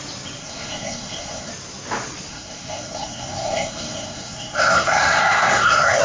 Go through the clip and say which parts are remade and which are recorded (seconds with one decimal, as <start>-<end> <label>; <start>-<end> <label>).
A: 0.0-0.4 recorded; 0.4-1.5 remade; 1.5-2.3 recorded; 2.3-6.0 remade